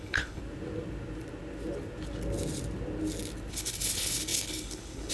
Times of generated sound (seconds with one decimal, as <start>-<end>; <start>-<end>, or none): 0.0-0.4; 3.5-5.1